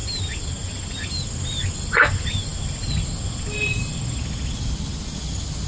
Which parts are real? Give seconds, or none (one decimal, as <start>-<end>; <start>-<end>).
0.0-5.7